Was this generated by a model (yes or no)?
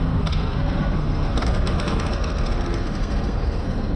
yes